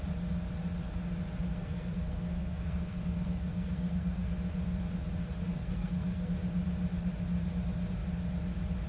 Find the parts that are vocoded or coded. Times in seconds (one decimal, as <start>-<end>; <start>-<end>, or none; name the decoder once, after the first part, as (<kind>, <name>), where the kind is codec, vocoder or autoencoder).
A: 1.5-4.3 (codec, SNAC); 5.5-6.3